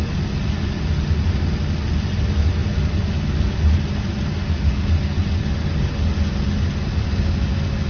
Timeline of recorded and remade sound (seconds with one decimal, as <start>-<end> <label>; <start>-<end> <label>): 0.0-7.9 recorded